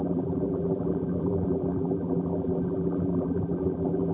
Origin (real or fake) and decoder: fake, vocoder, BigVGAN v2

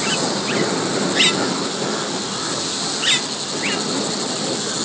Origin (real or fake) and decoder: real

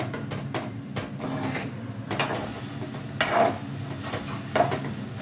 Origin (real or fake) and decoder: real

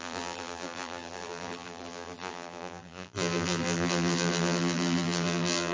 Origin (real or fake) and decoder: fake, vocoder, BigVGAN v2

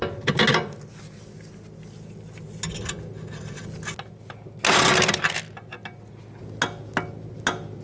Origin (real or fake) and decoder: real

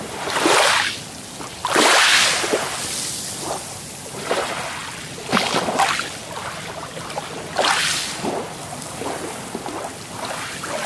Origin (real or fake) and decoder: real